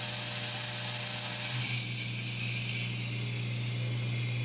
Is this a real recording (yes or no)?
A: yes